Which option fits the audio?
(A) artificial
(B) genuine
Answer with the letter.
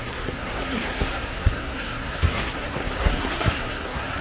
A